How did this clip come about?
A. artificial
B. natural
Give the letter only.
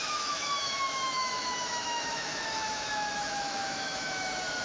A